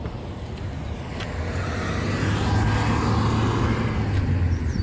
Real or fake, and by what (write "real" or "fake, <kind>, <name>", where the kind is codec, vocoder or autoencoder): real